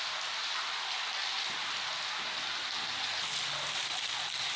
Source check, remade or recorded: recorded